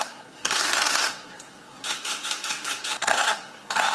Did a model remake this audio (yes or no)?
yes